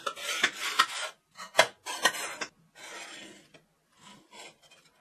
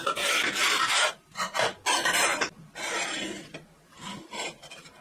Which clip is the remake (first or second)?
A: second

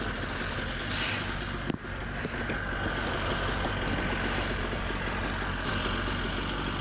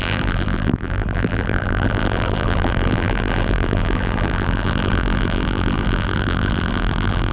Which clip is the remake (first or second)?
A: second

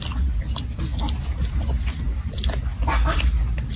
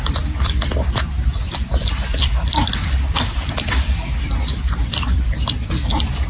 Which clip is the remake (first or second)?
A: second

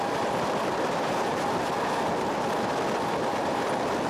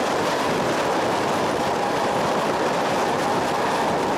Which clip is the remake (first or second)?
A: first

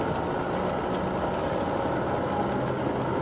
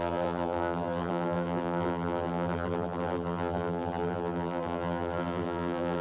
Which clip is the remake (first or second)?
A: second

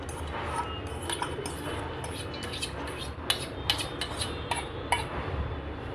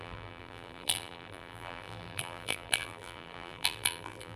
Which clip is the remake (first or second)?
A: second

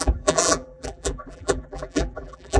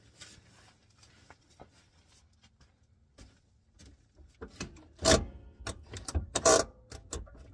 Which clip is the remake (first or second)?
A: first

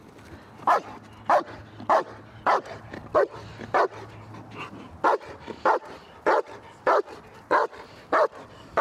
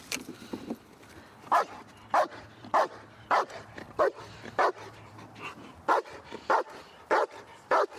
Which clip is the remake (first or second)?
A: second